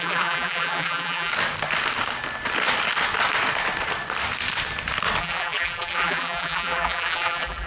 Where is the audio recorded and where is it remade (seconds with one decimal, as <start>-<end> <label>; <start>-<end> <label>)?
0.0-1.3 remade; 1.3-5.2 recorded; 5.2-7.7 remade